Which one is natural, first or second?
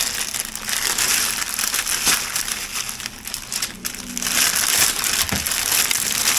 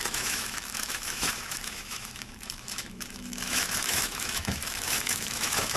first